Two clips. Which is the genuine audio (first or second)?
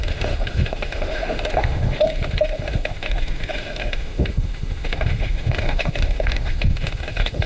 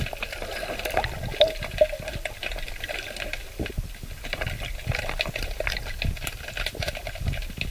second